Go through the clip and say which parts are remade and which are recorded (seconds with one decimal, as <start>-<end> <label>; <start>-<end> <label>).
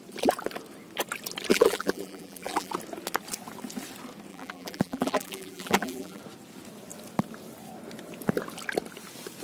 0.0-1.5 recorded; 1.5-2.7 remade; 2.7-4.3 recorded; 4.3-6.2 remade; 6.2-9.4 recorded